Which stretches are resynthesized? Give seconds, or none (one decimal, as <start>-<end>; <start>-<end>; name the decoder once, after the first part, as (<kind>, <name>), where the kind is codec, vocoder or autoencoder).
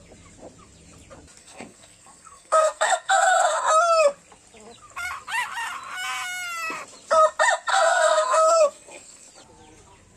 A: 1.4-3.6 (codec, SNAC); 7.7-9.3